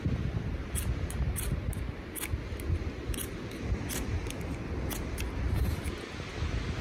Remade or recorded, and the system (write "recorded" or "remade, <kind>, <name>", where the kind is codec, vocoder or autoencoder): recorded